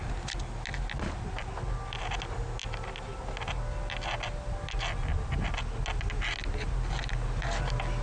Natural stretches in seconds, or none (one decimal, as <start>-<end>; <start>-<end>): 0.0-8.0

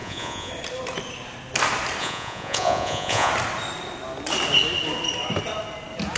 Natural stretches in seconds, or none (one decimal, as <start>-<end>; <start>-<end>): 0.5-2.0; 3.3-6.2

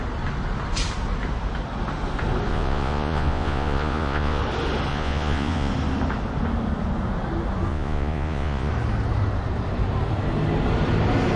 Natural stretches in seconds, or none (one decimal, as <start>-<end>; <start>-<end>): 0.0-2.5; 4.4-4.9; 5.7-7.7; 8.7-11.4

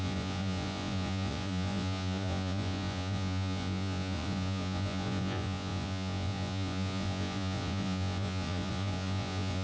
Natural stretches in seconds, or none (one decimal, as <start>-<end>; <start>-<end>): none